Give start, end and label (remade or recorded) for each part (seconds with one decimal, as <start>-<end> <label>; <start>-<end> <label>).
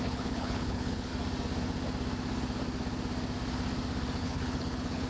0.0-1.1 remade; 1.1-4.2 recorded; 4.2-5.1 remade